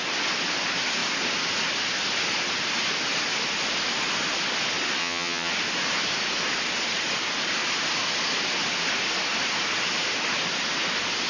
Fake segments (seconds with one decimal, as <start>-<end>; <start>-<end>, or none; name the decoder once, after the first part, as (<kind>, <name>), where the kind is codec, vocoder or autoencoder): 5.0-5.5 (vocoder, HiFi-GAN)